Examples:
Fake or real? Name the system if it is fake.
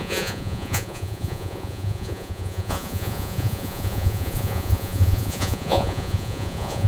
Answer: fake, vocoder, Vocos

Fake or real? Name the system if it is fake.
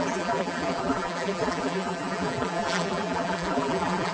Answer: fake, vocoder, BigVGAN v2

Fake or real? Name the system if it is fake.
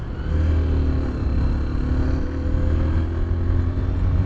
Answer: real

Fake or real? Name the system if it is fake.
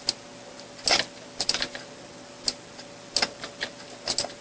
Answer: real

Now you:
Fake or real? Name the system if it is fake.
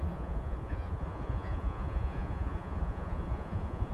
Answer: fake, vocoder, Vocos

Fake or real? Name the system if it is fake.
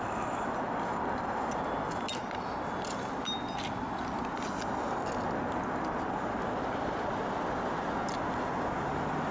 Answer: real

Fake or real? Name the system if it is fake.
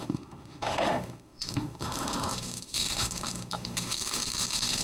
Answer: fake, autoencoder, DAC-VAE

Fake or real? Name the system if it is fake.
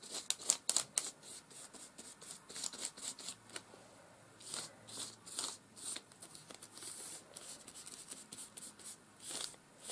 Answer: real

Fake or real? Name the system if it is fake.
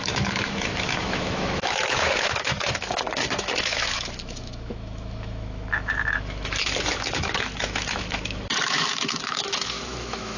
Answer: fake, autoencoder, DAC-VAE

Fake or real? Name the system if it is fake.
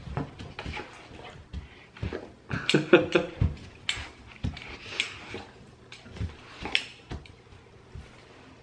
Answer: real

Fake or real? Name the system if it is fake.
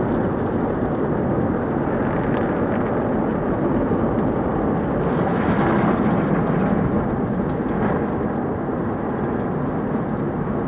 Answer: real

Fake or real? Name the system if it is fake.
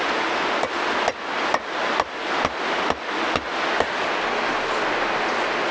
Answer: real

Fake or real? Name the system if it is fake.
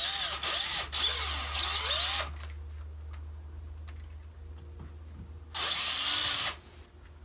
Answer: real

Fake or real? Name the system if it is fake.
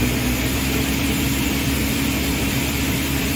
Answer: fake, vocoder, BigVGAN v2